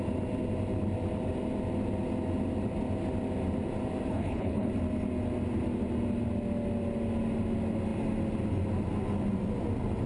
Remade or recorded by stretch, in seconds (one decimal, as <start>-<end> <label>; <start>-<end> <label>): 0.0-4.1 recorded; 4.1-4.7 remade; 4.7-10.1 recorded

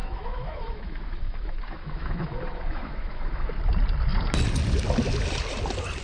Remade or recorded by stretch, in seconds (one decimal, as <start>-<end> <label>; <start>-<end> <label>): 0.0-3.5 remade; 3.5-6.0 recorded

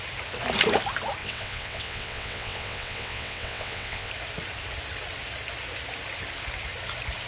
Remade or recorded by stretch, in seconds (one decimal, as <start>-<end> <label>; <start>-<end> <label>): 0.0-1.2 recorded; 1.2-4.1 remade; 4.1-7.3 recorded

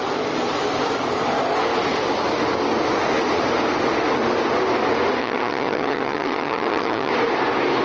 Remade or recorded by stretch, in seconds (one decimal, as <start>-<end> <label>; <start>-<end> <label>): 0.0-5.2 recorded; 5.2-7.1 remade; 7.1-7.8 recorded

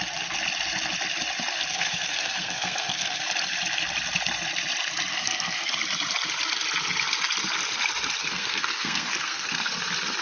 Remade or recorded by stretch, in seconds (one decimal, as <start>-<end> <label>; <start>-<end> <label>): 0.0-1.7 recorded; 1.7-3.2 remade; 3.2-5.1 recorded; 5.1-5.7 remade; 5.7-8.2 recorded; 8.2-9.7 remade; 9.7-10.2 recorded

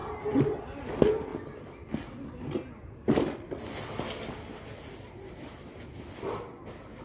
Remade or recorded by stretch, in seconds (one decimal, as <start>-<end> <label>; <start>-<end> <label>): 0.0-7.0 recorded